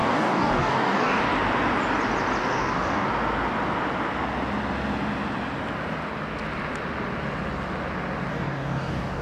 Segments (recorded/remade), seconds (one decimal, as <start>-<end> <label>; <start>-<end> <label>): 0.0-1.2 remade; 1.2-2.4 recorded; 2.4-3.1 remade; 3.1-8.3 recorded; 8.3-9.2 remade